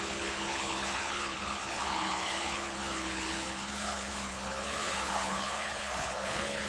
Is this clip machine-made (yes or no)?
yes